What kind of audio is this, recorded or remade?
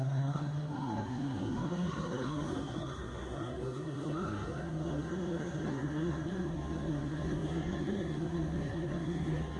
remade